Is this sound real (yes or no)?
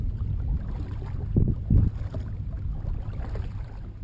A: yes